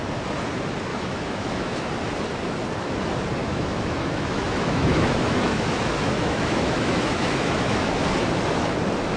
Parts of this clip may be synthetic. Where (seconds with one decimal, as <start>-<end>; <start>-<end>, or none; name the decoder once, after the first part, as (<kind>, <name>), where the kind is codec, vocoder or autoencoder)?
0.9-1.9 (autoencoder, DAC-VAE); 3.4-7.9